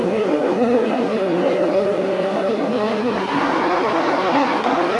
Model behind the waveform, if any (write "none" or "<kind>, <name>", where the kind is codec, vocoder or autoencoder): codec, SNAC